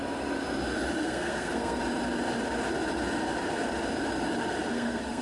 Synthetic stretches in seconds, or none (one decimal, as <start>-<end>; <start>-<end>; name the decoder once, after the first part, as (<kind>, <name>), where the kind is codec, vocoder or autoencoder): 1.0-1.8 (codec, SNAC); 4.7-5.2